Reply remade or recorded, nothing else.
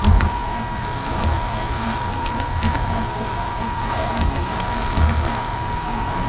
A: remade